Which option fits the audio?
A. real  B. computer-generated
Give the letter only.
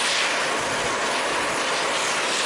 A